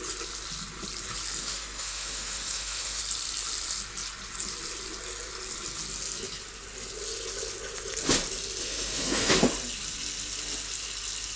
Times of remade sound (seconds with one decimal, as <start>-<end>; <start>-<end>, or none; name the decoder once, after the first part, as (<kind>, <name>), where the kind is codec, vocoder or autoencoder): 1.4-3.0 (autoencoder, DAC-VAE); 8.6-9.3